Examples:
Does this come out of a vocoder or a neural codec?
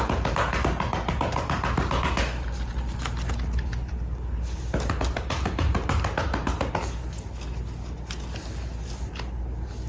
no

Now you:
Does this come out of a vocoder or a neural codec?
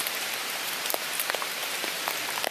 yes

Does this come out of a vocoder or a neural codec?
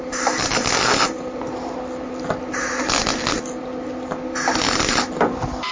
no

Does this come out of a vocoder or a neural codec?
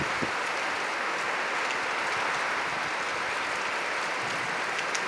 no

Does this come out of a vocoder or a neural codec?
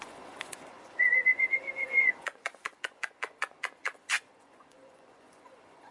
yes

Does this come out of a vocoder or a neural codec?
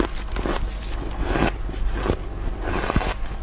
no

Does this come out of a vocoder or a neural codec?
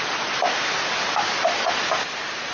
no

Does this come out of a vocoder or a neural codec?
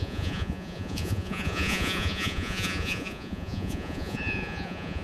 yes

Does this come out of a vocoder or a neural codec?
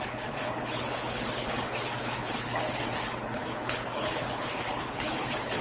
yes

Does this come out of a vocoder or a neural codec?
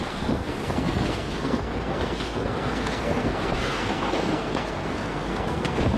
yes